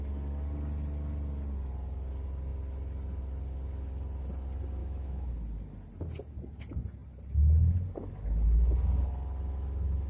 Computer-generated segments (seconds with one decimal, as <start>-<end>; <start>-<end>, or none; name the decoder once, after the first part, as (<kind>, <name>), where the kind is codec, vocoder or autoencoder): 4.8-5.3 (autoencoder, DAC-VAE)